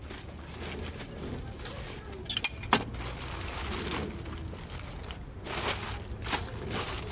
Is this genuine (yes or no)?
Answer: yes